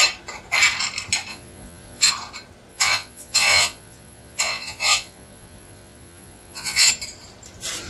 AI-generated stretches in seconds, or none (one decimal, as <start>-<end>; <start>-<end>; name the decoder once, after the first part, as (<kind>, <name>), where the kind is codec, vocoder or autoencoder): 1.3-2.1 (vocoder, Vocos); 2.7-6.9

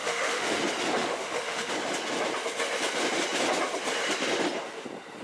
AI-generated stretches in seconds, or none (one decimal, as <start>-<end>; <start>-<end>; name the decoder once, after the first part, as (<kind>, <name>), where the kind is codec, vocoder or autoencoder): 0.0-0.6 (autoencoder, DAC-VAE); 1.0-1.7

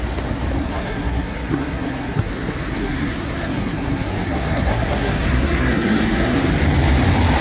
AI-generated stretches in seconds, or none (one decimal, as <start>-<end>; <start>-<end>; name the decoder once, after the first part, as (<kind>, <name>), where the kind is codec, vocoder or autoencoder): 0.6-2.3 (codec, SNAC); 2.7-6.5

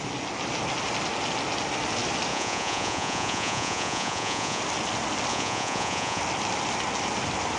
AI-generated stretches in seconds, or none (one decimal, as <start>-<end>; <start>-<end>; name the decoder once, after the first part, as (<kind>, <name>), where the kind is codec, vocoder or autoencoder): 2.3-4.6 (vocoder, Vocos); 5.3-6.2

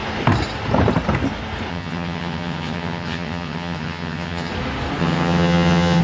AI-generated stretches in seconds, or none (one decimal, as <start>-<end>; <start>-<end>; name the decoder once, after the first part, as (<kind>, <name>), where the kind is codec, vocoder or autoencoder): 1.7-4.5 (vocoder, HiFi-GAN); 5.0-6.0